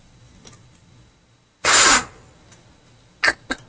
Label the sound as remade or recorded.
recorded